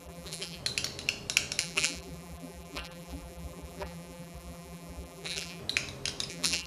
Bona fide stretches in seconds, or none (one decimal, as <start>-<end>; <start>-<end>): 0.6-1.6; 5.6-6.3